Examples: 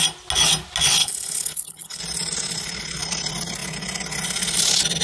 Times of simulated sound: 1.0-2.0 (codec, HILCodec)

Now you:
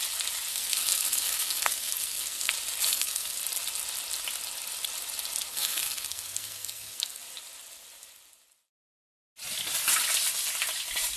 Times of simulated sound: 0.5-2.5 (codec, SNAC); 2.9-3.4; 5.5-7.2